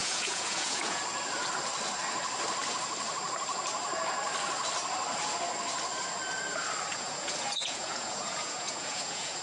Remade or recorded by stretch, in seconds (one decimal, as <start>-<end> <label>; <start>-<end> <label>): 0.0-1.0 remade; 1.0-6.9 recorded; 6.9-9.4 remade